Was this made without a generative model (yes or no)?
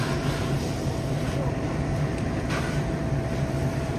no